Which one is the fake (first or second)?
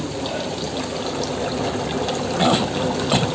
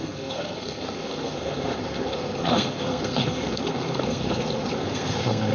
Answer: second